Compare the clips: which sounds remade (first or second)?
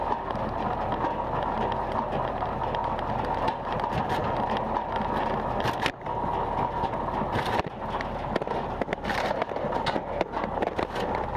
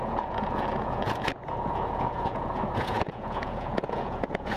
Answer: second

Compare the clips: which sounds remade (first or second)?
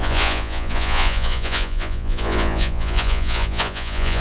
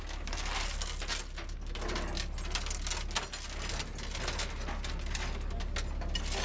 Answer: first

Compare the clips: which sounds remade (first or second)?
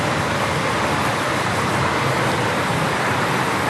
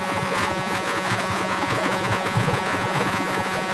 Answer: second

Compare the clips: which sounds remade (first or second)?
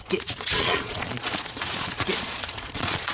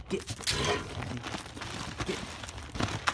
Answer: first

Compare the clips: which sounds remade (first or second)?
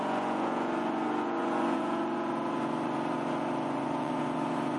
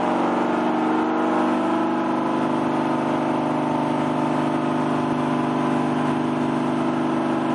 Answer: first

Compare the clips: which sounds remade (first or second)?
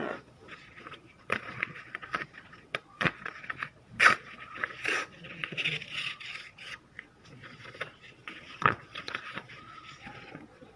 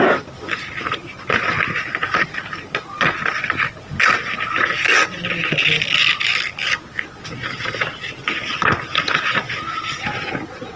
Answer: first